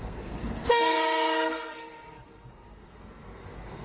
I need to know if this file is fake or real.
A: fake